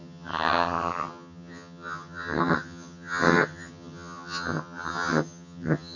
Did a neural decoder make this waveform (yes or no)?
yes